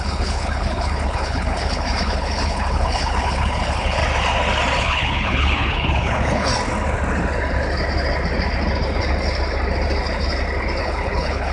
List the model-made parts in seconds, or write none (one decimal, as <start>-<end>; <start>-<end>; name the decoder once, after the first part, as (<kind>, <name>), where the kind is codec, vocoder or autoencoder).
0.0-4.0 (codec, HILCodec); 4.8-6.5; 10.8-11.5